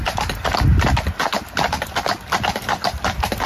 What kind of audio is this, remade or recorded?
recorded